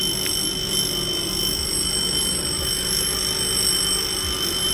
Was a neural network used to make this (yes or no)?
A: no